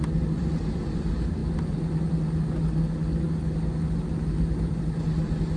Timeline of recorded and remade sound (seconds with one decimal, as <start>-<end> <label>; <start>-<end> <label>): 0.0-5.6 recorded